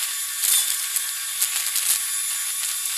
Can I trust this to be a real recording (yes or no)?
yes